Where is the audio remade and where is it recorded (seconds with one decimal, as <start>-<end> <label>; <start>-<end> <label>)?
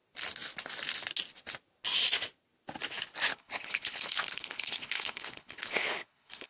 0.0-3.3 recorded; 3.3-6.5 remade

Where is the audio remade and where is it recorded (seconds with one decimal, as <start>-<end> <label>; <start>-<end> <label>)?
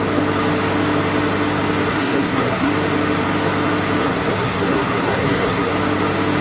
0.0-1.9 recorded; 1.9-2.7 remade; 2.7-4.0 recorded; 4.0-5.7 remade; 5.7-6.4 recorded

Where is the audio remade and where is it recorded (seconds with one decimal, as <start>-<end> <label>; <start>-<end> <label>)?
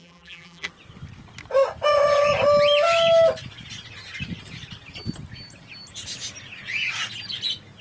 0.0-0.7 remade; 0.7-7.8 recorded